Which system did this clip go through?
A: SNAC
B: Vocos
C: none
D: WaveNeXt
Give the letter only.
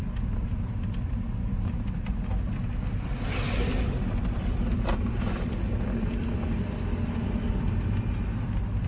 C